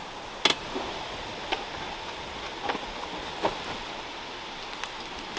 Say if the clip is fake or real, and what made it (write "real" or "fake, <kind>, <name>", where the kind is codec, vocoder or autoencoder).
real